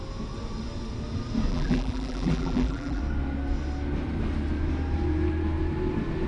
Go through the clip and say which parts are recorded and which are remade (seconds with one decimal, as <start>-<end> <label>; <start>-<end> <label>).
0.0-1.5 recorded; 1.5-3.0 remade; 3.0-6.3 recorded